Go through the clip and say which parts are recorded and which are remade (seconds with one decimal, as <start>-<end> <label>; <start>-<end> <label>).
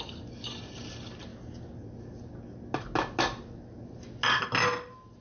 0.0-5.2 recorded